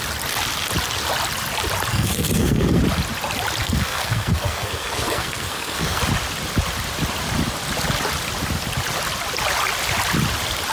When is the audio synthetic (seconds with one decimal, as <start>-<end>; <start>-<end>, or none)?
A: 1.9-2.8; 3.6-6.0